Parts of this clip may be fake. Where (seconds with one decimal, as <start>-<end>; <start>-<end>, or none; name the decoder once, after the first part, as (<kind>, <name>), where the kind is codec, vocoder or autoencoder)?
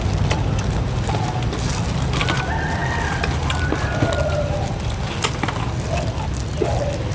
none